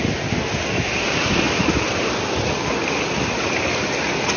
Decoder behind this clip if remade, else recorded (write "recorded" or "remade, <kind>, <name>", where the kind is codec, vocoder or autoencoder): recorded